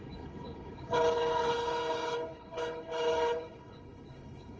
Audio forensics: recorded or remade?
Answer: remade